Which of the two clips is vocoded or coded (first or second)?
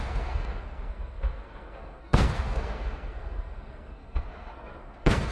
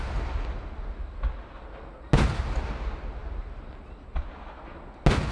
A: first